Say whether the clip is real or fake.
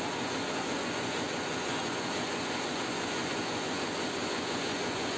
fake